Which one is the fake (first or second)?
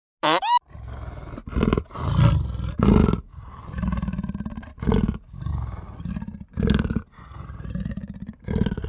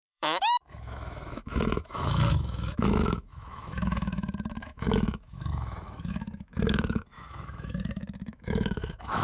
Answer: second